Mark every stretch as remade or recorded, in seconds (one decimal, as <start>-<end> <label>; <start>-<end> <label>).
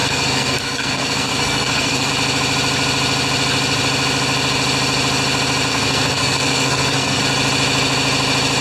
0.0-2.1 remade; 2.1-5.7 recorded; 5.7-7.2 remade; 7.2-8.6 recorded